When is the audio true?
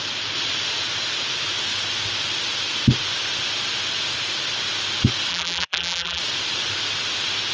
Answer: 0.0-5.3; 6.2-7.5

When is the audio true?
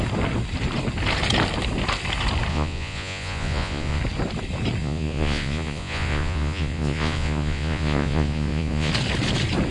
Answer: 0.0-2.5; 4.0-4.8; 8.9-9.7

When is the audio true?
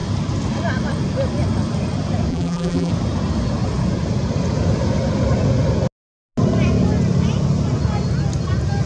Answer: 0.0-2.3; 2.9-8.9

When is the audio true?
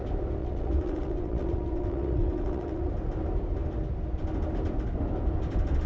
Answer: 0.0-0.4; 2.9-5.9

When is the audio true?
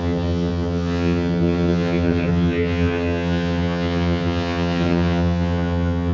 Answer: none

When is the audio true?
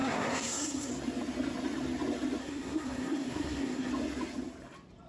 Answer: 0.9-2.4; 3.9-5.1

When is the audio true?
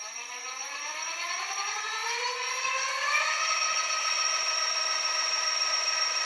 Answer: 0.0-6.2